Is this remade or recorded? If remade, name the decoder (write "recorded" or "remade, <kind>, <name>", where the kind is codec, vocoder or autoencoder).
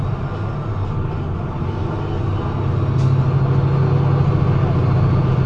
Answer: recorded